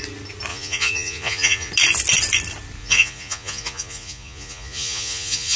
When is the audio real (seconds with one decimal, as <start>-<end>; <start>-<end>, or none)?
0.0-0.5; 1.7-2.8